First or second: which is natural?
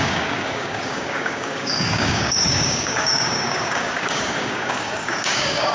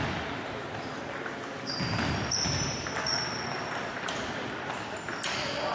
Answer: second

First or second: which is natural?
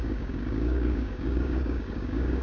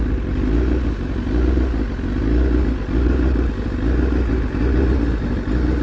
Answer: second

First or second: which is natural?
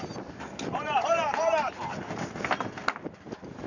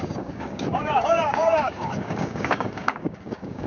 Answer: first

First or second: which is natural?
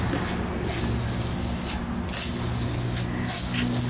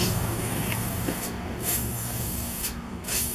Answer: first